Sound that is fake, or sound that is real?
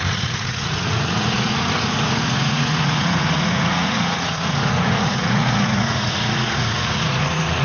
fake